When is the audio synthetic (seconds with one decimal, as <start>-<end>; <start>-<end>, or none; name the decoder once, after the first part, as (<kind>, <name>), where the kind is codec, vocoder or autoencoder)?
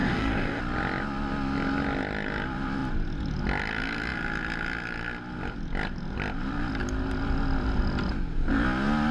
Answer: 0.0-0.6 (codec, DAC)